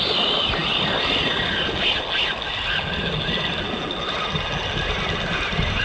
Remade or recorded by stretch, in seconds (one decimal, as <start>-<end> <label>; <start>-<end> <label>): 0.0-5.8 recorded